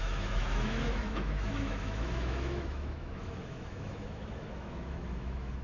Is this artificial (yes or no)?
yes